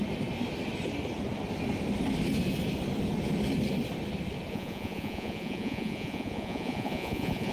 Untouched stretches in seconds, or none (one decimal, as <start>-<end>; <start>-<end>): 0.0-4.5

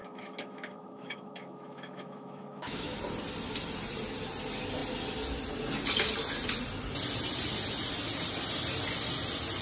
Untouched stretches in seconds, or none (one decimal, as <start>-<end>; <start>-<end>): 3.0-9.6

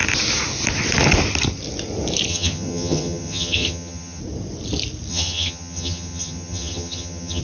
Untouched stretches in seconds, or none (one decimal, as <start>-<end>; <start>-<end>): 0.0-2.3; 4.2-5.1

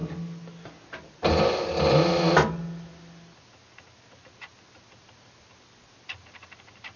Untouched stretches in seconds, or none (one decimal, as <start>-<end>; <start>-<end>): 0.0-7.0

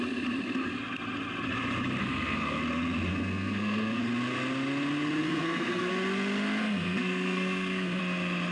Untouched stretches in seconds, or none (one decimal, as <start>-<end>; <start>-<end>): 0.0-2.0; 2.6-3.1; 4.0-5.2; 5.9-6.6; 8.0-8.5

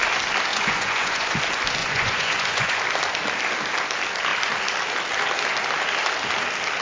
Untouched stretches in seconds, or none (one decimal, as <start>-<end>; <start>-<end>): 0.0-0.5; 1.4-1.8; 2.8-6.8